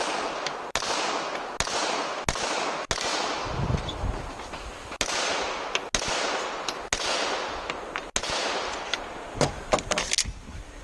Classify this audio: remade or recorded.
recorded